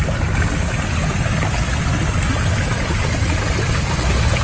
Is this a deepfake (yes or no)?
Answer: no